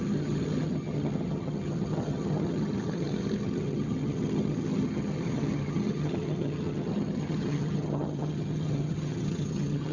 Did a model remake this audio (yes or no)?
yes